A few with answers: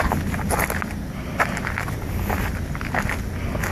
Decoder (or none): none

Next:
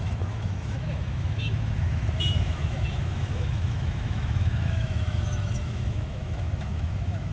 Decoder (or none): autoencoder, DAC-VAE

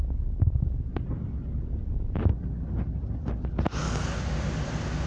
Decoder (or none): none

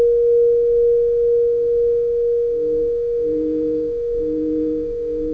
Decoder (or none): autoencoder, DAC-VAE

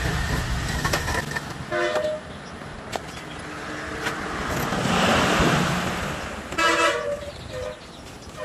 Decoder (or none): none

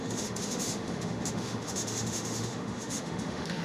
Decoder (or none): autoencoder, DAC-VAE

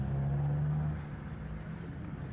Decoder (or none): none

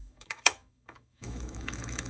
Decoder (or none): autoencoder, DAC-VAE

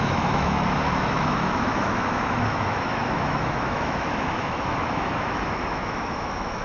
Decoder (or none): autoencoder, DAC-VAE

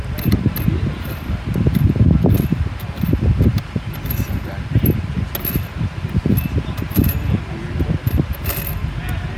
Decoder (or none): none